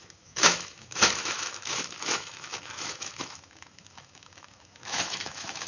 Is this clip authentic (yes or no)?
no